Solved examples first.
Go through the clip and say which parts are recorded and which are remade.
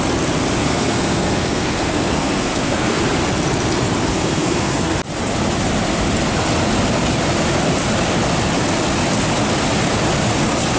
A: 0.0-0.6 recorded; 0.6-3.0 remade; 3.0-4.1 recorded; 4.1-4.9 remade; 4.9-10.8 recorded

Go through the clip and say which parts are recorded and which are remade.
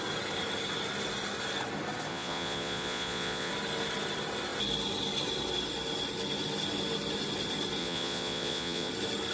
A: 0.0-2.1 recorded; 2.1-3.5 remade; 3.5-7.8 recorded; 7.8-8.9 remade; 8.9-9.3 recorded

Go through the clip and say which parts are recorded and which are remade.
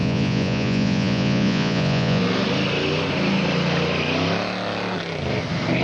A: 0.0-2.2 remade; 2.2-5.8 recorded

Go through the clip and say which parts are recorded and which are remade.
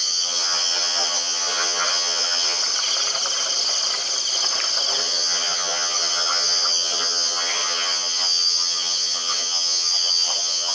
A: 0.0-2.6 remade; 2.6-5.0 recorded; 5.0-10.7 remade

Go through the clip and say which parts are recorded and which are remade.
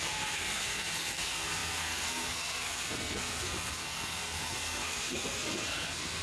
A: 0.0-6.2 remade